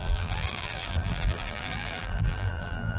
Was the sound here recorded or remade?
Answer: remade